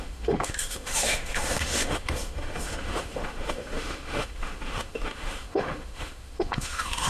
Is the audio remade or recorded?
remade